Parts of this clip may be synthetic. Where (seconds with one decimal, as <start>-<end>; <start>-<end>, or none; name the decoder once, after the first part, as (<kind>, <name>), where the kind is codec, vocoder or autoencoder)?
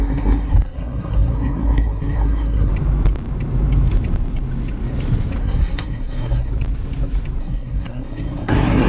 0.0-2.7 (codec, SNAC); 5.4-6.5; 7.4-8.9